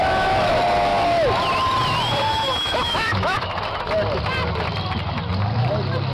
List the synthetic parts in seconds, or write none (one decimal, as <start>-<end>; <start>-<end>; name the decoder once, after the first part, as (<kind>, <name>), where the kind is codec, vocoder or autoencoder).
2.3-3.6 (autoencoder, DAC-VAE)